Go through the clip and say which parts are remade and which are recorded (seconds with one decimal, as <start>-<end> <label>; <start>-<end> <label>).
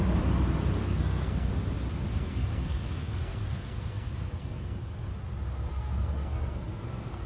0.0-0.8 recorded; 0.8-1.5 remade; 1.5-2.1 recorded; 2.1-5.1 remade; 5.1-5.7 recorded; 5.7-7.3 remade